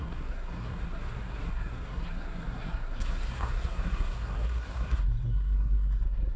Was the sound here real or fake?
fake